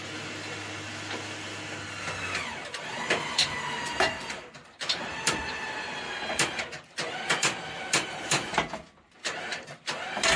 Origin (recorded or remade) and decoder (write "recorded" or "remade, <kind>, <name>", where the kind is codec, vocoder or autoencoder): recorded